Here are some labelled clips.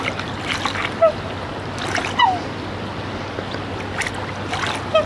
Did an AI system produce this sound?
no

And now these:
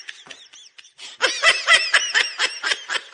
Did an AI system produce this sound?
no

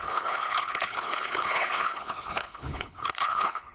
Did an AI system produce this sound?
yes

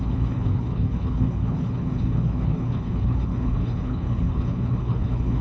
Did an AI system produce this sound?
yes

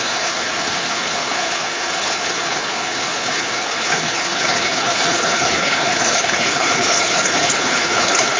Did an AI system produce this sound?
yes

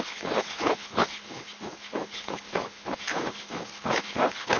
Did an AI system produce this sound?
yes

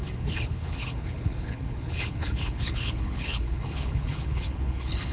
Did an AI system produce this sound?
yes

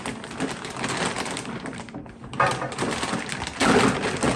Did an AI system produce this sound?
no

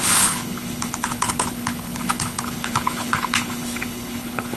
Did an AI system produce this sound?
yes